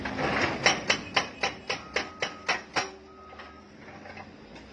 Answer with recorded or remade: recorded